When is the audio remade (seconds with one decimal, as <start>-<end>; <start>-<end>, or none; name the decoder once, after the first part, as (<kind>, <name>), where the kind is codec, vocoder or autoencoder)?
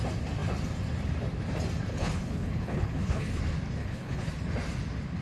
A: 1.9-3.4 (codec, HILCodec); 3.8-4.3